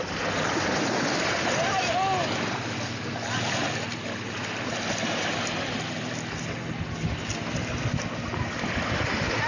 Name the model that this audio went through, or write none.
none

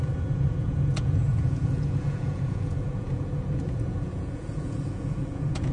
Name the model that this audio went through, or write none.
vocoder, Vocos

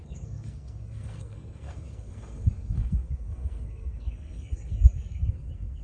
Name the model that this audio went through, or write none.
codec, SNAC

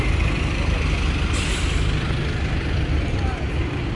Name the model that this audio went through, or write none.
none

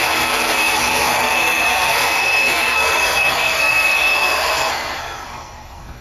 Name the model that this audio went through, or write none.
codec, SNAC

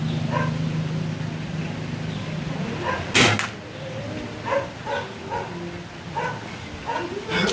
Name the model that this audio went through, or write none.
none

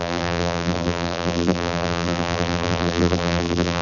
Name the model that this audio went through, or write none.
vocoder, BigVGAN v2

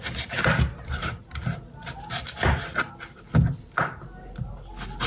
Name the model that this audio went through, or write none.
none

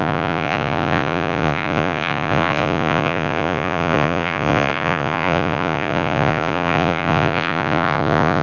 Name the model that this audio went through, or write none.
vocoder, Vocos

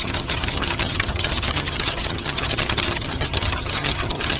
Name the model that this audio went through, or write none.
vocoder, HiFi-GAN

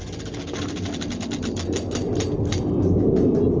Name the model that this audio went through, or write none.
none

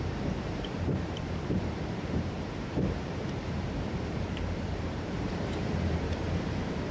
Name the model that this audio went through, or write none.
vocoder, BigVGAN v2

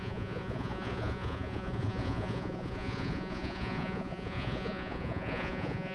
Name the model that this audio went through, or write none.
vocoder, Vocos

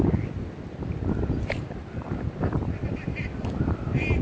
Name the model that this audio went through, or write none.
none